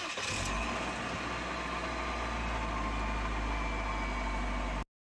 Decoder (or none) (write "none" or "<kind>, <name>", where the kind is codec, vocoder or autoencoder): none